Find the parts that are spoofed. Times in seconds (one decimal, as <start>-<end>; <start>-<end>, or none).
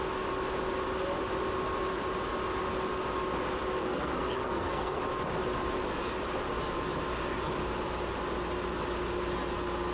3.8-5.0